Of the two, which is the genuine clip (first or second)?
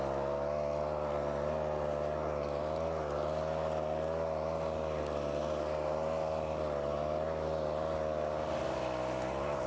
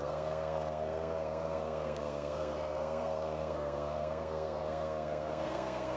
first